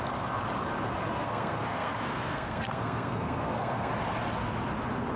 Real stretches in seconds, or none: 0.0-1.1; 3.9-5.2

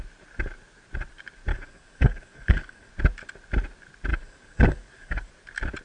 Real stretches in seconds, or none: 0.0-1.5; 2.9-4.1; 5.3-5.8

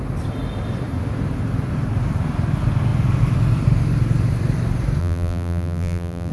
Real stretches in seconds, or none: 0.0-5.0